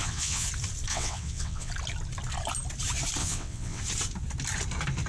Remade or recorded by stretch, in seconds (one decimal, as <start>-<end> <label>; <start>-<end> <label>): 0.0-0.5 remade; 0.5-0.9 recorded; 0.9-1.7 remade; 1.7-3.2 recorded; 3.2-3.8 remade; 3.8-5.1 recorded

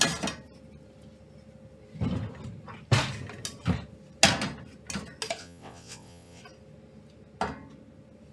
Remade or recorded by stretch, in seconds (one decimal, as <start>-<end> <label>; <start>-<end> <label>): 0.0-5.4 recorded; 5.4-6.4 remade; 6.4-8.3 recorded

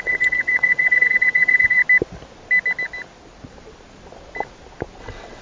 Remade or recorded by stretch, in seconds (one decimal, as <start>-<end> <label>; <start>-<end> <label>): 0.0-1.8 remade; 1.8-5.0 recorded; 5.0-5.4 remade

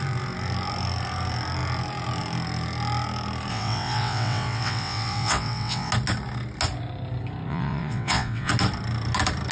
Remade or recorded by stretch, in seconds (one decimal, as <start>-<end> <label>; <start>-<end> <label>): 0.0-3.5 recorded; 3.5-5.9 remade; 5.9-7.5 recorded; 7.5-8.5 remade; 8.5-9.5 recorded